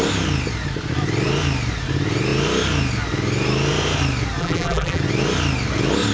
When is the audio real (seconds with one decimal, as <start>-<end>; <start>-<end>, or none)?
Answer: 0.0-4.4; 5.0-6.1